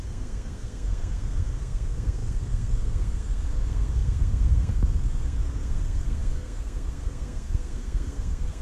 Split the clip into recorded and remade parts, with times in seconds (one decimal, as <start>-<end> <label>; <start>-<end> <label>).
0.0-8.6 remade